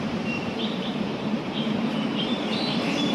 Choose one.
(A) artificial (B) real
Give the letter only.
A